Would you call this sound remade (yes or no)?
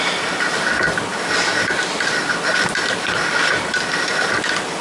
no